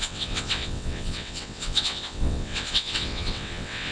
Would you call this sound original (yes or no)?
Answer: no